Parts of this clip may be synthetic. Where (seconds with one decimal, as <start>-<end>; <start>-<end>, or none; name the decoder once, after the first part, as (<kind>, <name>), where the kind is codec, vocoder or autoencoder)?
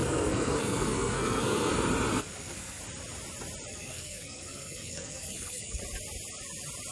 0.0-1.7 (codec, SNAC); 2.1-2.8; 3.7-5.8